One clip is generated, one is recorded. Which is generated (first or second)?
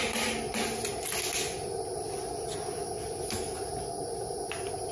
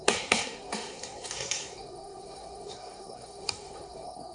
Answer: second